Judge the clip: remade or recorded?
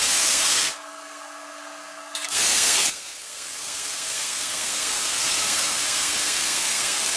remade